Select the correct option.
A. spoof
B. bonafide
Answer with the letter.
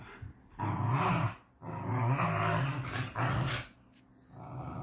B